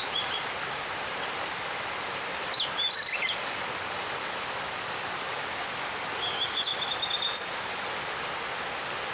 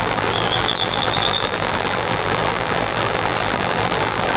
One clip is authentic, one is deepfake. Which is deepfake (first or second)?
second